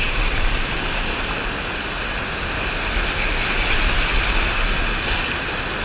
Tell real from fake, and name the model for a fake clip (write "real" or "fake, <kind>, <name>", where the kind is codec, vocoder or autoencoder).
real